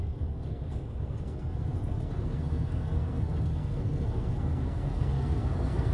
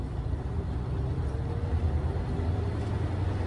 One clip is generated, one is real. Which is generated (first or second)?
first